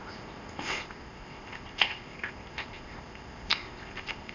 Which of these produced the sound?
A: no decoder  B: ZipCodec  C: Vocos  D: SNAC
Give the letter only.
B